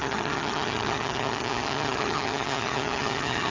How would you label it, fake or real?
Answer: fake